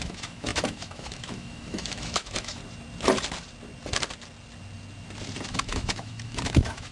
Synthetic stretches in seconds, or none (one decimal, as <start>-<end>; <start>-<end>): 0.0-2.6; 5.5-6.9